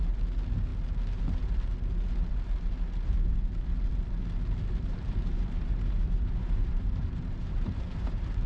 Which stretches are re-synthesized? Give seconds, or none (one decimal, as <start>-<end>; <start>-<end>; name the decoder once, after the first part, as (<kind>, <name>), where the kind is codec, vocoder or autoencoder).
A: 4.9-8.5 (vocoder, BigVGAN v2)